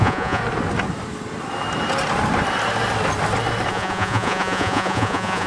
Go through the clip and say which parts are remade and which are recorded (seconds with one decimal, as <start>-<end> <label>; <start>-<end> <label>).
0.0-0.4 remade; 0.4-3.7 recorded; 3.7-5.5 remade